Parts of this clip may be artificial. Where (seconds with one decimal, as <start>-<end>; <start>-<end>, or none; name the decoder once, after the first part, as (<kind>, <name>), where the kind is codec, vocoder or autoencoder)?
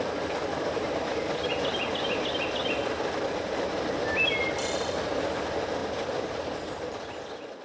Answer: none